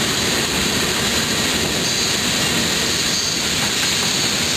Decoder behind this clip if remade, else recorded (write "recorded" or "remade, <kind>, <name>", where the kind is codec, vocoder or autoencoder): recorded